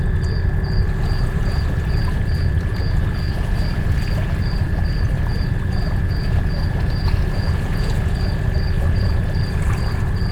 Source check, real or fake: fake